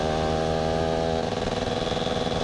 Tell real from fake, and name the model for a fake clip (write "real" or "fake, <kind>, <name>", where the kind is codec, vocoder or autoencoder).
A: real